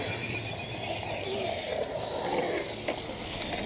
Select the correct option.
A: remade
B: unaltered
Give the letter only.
B